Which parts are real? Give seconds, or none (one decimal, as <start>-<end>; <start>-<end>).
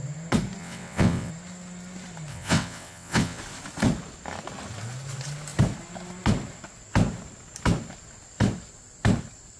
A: 0.0-0.6; 1.3-2.3; 3.4-9.6